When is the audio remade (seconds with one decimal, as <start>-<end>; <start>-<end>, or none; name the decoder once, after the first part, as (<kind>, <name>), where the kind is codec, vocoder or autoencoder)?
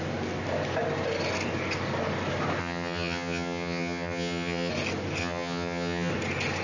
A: 2.6-4.7 (vocoder, HiFi-GAN); 5.2-6.1